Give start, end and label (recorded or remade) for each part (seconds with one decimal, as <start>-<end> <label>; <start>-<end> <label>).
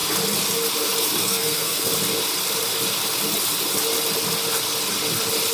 0.0-1.2 recorded; 1.2-1.9 remade; 1.9-5.5 recorded